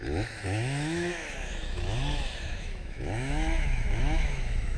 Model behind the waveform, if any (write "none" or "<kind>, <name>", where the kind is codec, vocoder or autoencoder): autoencoder, DAC-VAE